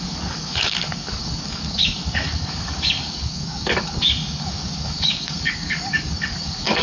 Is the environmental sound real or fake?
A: fake